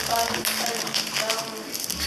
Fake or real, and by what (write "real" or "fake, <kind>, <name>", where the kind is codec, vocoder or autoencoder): real